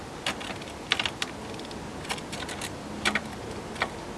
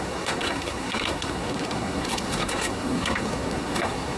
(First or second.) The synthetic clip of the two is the second